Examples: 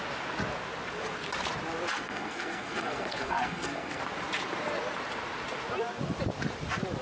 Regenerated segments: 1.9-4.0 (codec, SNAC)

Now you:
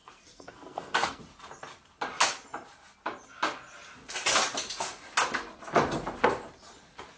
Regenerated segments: 0.0-1.2 (codec, SNAC)

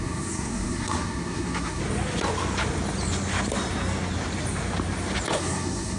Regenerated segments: 0.0-1.8 (codec, SNAC); 5.4-6.0

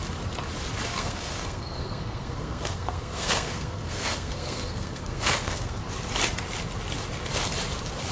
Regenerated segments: 0.9-5.8 (codec, SNAC)

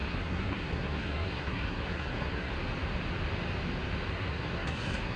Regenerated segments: 0.0-2.5 (codec, SNAC); 4.1-5.2

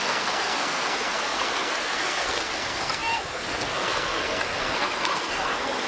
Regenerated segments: 0.0-5.9 (codec, SNAC)

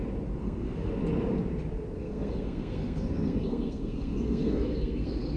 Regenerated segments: 0.4-0.9 (codec, SNAC); 2.0-5.4